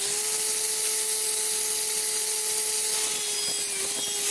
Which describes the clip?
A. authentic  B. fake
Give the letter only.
A